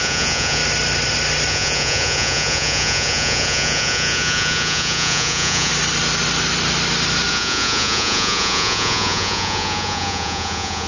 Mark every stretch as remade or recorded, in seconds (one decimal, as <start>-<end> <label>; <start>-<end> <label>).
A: 0.0-0.6 remade; 0.6-1.5 recorded; 1.5-5.7 remade; 5.7-7.3 recorded; 7.3-10.9 remade